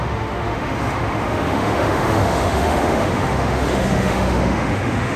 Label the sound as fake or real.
fake